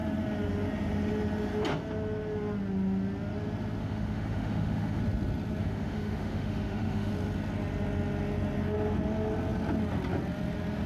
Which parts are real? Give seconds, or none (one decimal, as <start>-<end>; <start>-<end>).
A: 0.0-3.8; 5.0-5.6; 7.1-10.9